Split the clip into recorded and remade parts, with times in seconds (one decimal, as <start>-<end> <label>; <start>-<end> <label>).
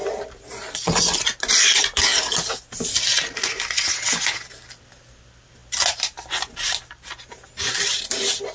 0.0-8.5 recorded